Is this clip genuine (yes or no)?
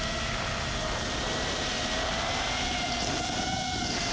yes